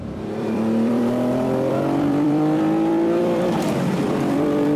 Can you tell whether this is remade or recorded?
remade